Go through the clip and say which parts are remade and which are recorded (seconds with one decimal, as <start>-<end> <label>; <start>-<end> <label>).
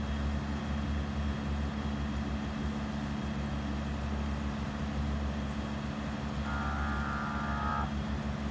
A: 0.0-8.5 recorded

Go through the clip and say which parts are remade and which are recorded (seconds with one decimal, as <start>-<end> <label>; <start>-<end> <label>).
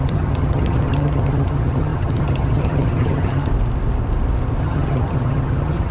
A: 0.0-3.5 remade; 3.5-4.6 recorded; 4.6-5.9 remade